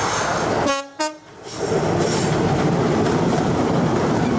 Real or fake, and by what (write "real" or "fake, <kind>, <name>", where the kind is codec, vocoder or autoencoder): real